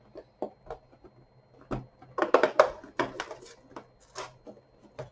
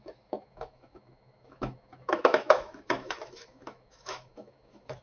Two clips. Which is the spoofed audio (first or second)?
second